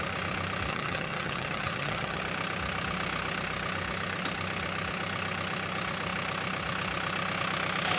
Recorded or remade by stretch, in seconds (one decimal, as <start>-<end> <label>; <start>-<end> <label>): 0.0-0.7 recorded; 0.7-2.2 remade; 2.2-8.0 recorded